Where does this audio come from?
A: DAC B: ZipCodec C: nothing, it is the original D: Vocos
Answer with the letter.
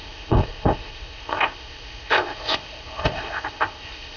B